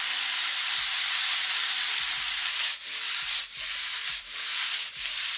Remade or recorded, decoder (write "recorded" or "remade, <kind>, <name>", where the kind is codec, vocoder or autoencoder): remade, vocoder, BigVGAN v2